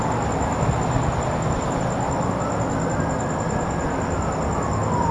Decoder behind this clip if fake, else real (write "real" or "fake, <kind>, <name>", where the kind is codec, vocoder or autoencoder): real